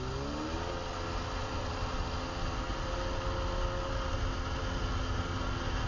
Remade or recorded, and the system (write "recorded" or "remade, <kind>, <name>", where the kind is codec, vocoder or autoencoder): recorded